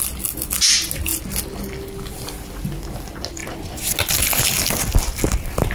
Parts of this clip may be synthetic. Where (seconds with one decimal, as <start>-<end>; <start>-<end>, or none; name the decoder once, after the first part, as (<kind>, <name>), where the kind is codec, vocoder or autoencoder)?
none